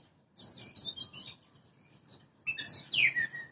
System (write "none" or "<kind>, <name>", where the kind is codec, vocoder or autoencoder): none